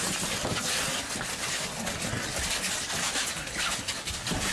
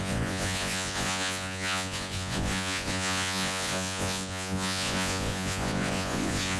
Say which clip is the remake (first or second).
second